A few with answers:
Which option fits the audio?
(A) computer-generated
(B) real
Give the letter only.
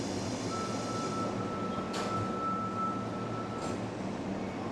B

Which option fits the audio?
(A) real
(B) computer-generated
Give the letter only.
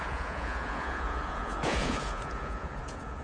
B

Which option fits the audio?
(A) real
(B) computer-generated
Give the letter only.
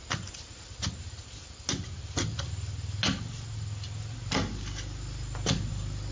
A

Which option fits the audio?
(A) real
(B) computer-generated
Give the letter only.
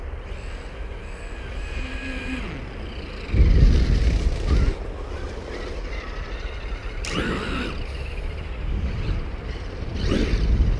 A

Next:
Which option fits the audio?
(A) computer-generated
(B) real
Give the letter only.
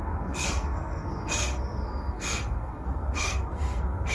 A